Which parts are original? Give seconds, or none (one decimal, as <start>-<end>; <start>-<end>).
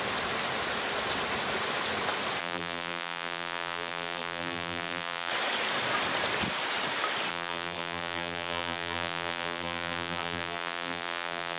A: 0.0-2.4; 5.3-7.3